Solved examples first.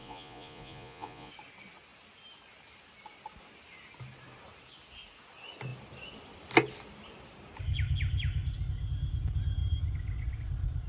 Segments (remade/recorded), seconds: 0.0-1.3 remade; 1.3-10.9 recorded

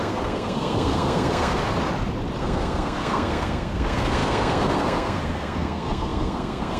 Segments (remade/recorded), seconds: 0.0-1.6 remade; 1.6-2.4 recorded; 2.4-6.8 remade

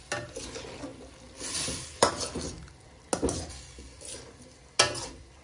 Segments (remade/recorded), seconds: 0.0-5.4 recorded

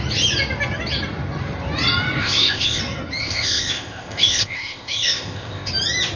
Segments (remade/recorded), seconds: 0.0-2.2 recorded; 2.2-2.8 remade; 2.8-3.2 recorded; 3.2-5.7 remade; 5.7-6.2 recorded

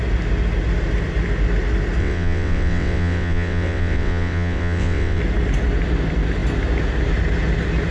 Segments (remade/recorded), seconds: 0.0-2.0 recorded; 2.0-5.2 remade; 5.2-7.9 recorded

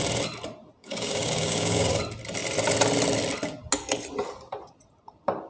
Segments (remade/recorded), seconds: 0.0-0.8 recorded; 0.8-2.0 remade; 2.0-5.5 recorded

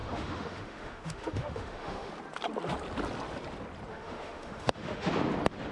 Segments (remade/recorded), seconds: 0.0-2.1 remade; 2.1-3.9 recorded; 3.9-5.1 remade; 5.1-5.7 recorded